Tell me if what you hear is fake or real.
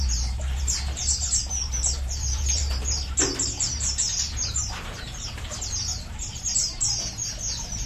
fake